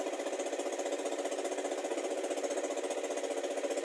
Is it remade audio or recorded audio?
recorded